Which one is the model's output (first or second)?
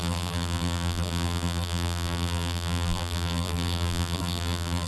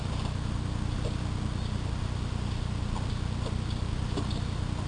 first